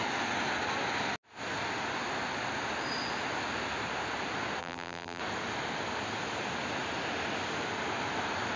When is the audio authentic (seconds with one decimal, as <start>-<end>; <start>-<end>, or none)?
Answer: 0.0-4.6; 5.2-8.6